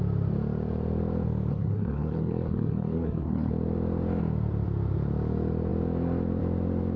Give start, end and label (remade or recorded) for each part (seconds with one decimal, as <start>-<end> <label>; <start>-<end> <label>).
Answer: 0.0-1.5 recorded; 1.5-3.5 remade; 3.5-7.0 recorded